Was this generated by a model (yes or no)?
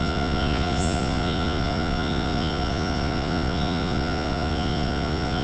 yes